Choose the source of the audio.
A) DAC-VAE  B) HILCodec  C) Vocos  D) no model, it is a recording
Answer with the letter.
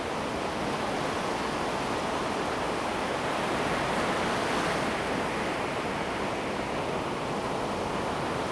D